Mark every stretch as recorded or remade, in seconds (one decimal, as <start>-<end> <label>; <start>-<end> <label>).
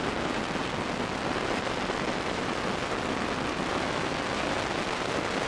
0.0-5.5 recorded